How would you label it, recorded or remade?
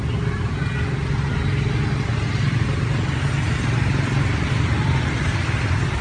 recorded